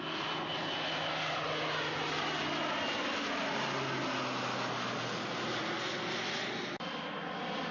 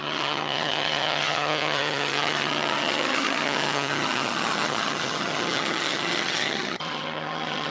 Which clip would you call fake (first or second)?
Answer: second